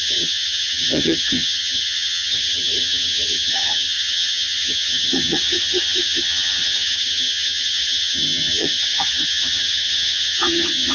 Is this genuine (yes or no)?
no